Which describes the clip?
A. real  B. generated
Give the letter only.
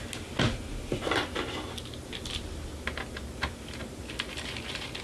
A